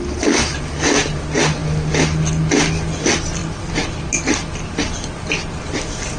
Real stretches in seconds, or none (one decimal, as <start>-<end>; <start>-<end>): 0.0-6.2